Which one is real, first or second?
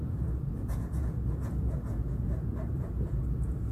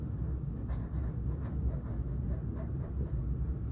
second